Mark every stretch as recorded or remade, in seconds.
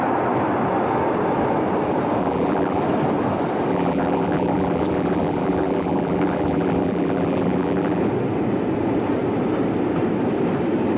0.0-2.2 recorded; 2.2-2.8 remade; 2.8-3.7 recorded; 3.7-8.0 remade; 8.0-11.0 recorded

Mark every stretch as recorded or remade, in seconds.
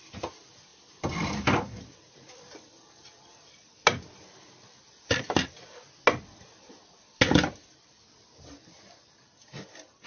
0.0-10.1 recorded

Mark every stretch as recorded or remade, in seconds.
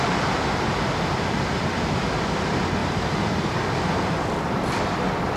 0.0-2.8 recorded; 2.8-4.4 remade; 4.4-5.4 recorded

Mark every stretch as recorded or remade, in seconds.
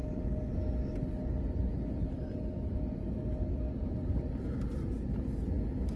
0.0-6.0 recorded